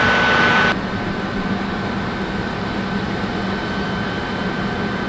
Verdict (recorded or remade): recorded